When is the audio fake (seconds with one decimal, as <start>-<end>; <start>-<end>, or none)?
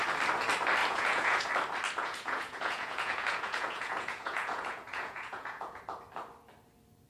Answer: 0.8-1.5; 2.0-5.8